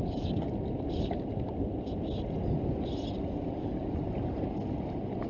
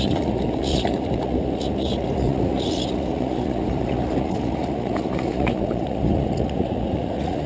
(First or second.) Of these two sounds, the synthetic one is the second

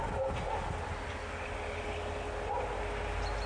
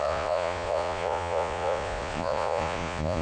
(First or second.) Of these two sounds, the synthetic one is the second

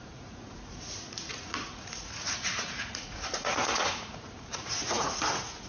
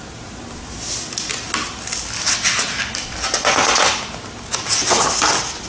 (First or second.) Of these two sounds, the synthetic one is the first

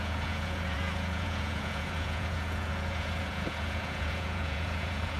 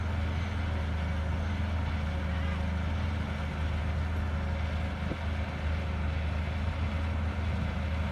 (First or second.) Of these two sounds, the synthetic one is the first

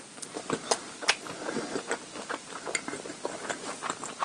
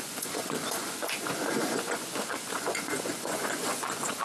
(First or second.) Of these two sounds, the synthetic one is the second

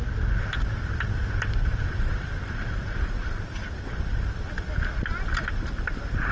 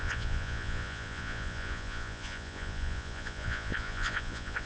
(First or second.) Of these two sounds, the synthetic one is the second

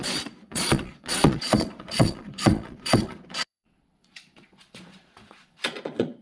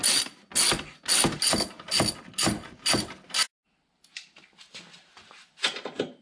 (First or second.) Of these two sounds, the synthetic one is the first